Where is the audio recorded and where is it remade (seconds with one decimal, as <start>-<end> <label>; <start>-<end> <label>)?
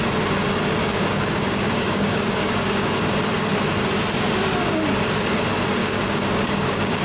0.0-0.8 recorded; 0.8-2.9 remade; 2.9-5.8 recorded; 5.8-7.0 remade